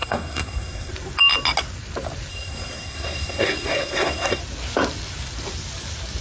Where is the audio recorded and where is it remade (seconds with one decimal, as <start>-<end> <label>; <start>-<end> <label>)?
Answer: 0.0-0.9 remade; 0.9-2.3 recorded; 2.3-4.4 remade; 4.4-6.2 recorded